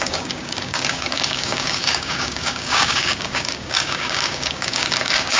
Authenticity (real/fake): fake